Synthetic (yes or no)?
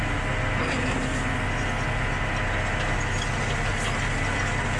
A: no